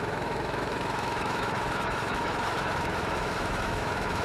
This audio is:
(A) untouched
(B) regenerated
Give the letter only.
B